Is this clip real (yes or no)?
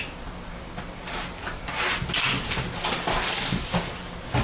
yes